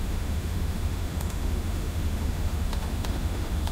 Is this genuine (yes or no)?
no